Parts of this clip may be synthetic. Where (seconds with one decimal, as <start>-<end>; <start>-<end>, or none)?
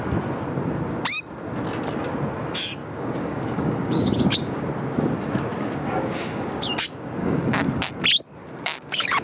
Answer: 2.8-4.7; 5.5-6.8; 7.2-7.9; 8.4-9.2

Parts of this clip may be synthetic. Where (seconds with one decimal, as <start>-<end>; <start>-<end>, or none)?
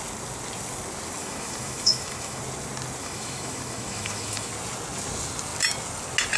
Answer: 1.2-2.4; 3.0-4.5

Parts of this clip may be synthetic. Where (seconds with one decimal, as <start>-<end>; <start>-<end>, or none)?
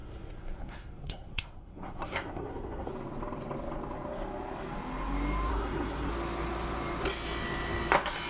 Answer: 0.0-2.9; 5.5-6.1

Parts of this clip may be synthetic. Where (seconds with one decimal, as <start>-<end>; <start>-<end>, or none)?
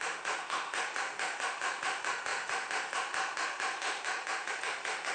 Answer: 0.0-5.1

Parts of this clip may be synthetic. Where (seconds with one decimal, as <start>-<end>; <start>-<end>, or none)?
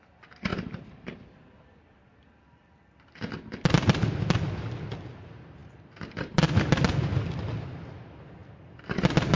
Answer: none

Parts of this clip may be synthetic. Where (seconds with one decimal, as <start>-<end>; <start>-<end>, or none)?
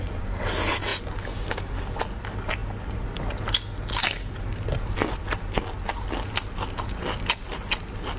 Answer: none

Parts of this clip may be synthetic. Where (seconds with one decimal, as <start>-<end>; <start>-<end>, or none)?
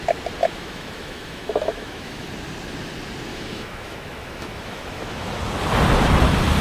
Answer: 0.4-2.3; 3.3-5.4